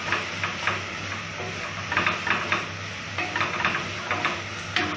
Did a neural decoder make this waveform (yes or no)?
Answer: no